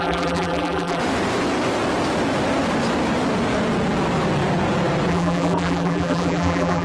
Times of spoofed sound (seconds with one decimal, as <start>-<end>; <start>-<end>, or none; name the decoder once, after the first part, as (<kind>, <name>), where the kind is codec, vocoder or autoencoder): 0.0-1.0 (vocoder, BigVGAN v2); 5.1-6.8